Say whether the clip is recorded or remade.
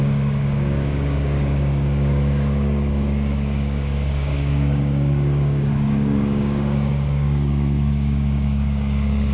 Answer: remade